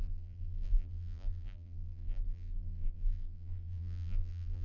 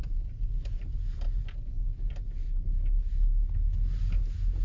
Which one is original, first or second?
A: second